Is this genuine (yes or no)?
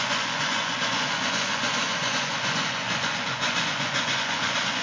no